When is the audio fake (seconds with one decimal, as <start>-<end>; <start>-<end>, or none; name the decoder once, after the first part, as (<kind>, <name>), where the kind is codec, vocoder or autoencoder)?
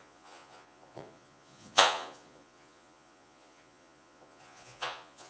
0.0-5.3 (vocoder, Vocos)